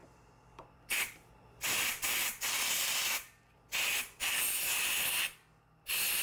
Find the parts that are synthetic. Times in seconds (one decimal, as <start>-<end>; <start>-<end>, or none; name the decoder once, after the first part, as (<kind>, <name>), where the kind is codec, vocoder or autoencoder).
0.0-3.7 (vocoder, BigVGAN v2)